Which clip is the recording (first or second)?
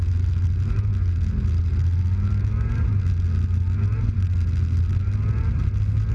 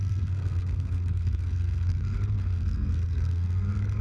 first